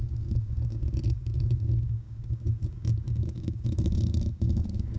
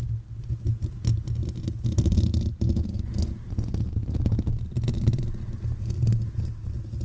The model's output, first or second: first